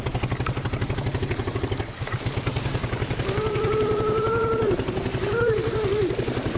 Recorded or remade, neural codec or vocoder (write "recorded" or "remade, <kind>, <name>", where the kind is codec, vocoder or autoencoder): remade, vocoder, BigVGAN v2